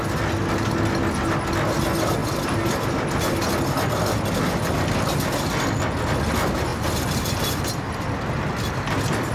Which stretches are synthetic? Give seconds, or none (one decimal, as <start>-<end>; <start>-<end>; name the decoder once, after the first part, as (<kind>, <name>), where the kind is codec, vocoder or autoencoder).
2.2-2.8 (vocoder, BigVGAN v2); 6.7-8.0

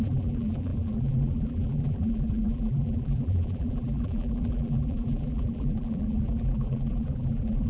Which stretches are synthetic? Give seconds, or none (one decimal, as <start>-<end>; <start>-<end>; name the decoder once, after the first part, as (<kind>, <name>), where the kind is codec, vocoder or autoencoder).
0.0-7.7 (vocoder, BigVGAN v2)

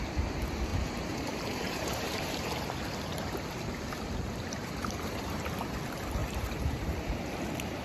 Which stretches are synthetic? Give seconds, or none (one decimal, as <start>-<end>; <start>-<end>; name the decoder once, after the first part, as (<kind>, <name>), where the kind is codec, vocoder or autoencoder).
0.7-2.6 (vocoder, BigVGAN v2); 4.6-5.4; 6.2-7.2